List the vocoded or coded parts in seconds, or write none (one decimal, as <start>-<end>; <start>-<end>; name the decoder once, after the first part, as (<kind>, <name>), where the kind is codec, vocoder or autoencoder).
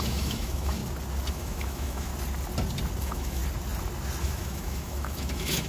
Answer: 0.0-0.8 (autoencoder, DAC-VAE); 1.3-2.1; 3.0-3.4; 4.2-5.7